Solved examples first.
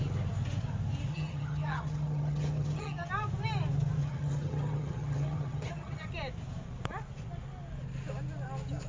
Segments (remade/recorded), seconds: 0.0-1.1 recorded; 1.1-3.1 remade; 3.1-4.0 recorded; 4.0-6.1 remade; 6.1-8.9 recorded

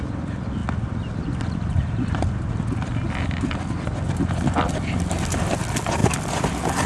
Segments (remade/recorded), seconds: 0.0-6.9 recorded